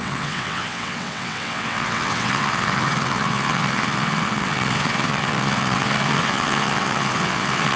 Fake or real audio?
fake